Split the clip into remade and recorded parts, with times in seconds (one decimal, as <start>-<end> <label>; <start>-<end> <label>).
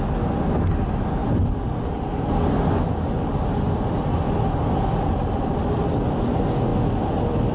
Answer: 0.0-7.5 recorded